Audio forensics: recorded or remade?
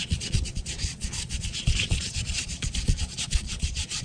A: remade